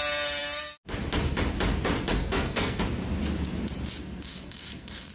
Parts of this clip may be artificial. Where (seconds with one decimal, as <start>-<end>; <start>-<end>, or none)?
2.1-2.8; 4.0-5.1